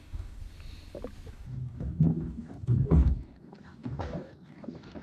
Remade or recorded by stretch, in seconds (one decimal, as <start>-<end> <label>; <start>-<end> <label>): 0.0-0.4 remade; 0.4-1.3 recorded; 1.3-5.0 remade

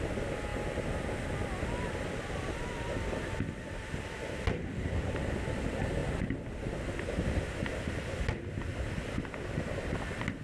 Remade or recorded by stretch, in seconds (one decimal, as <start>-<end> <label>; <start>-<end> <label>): 0.0-10.4 recorded